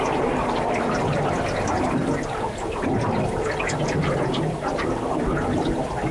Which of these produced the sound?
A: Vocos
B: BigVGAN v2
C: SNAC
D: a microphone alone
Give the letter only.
D